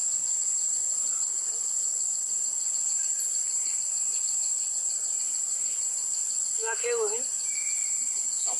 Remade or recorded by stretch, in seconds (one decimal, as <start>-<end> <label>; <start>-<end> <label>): 0.0-8.6 recorded